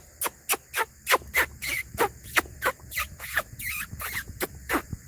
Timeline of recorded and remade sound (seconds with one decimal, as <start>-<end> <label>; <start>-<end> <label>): 0.0-1.6 recorded; 1.6-5.1 remade